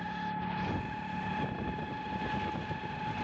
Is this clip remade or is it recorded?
recorded